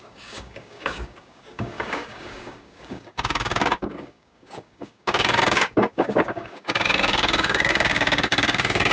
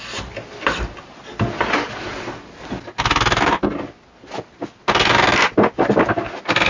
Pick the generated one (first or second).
first